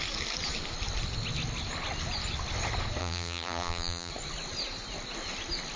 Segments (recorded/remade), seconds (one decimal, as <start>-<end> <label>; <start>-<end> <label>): 0.0-3.0 recorded; 3.0-4.1 remade; 4.1-5.8 recorded